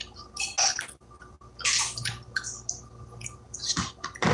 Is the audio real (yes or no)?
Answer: yes